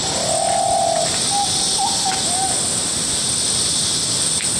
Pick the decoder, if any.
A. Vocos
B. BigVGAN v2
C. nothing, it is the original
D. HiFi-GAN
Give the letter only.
C